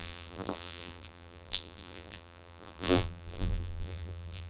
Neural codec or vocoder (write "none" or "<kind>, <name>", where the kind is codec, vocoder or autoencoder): vocoder, BigVGAN v2